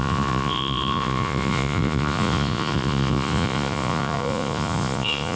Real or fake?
fake